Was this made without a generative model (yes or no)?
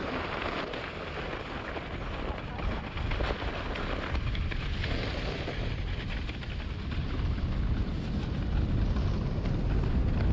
yes